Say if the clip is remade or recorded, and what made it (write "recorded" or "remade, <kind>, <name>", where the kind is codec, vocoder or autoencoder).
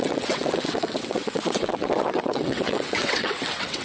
remade, vocoder, WaveNeXt